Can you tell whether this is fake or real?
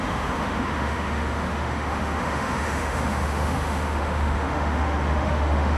fake